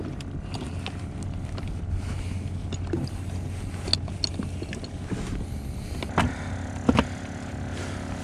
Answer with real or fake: real